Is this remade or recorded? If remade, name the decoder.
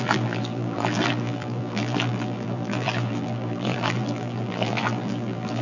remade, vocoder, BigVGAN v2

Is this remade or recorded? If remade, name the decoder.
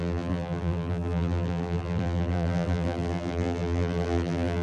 remade, vocoder, BigVGAN v2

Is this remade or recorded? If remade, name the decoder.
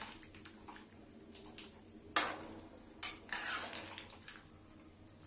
recorded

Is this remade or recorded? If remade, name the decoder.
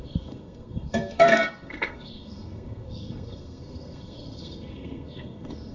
remade, codec, SNAC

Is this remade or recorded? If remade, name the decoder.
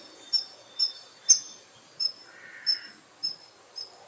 recorded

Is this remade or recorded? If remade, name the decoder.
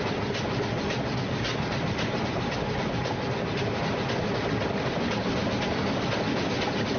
recorded